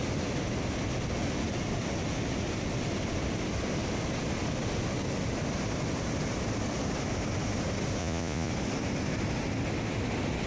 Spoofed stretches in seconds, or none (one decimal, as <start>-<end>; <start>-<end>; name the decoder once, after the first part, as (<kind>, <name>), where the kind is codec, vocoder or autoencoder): 8.0-8.5 (vocoder, Vocos)